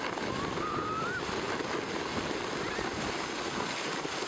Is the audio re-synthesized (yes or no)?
no